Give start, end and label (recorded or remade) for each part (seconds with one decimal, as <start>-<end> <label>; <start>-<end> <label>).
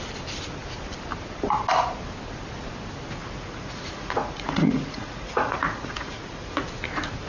0.0-3.2 recorded; 3.2-6.6 remade; 6.6-7.3 recorded